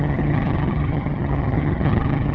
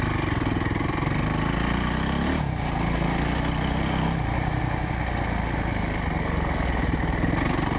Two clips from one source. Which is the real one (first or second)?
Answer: second